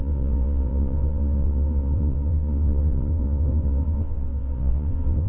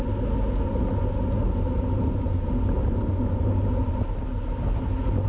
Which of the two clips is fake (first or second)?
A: first